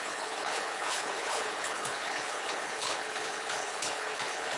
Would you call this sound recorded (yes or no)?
no